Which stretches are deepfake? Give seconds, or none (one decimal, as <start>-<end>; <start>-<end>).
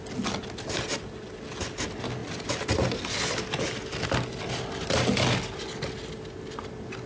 none